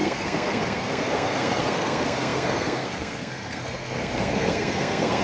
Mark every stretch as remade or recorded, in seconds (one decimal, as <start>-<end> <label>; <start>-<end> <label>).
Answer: 0.0-5.2 remade